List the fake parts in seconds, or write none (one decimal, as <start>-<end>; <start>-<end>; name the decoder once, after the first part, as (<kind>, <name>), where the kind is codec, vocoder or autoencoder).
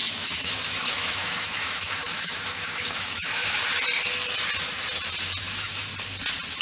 0.0-3.6 (autoencoder, DAC-VAE); 5.4-5.9